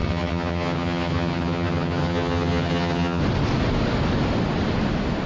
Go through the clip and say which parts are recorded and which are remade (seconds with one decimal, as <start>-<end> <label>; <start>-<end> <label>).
0.0-3.2 remade; 3.2-5.3 recorded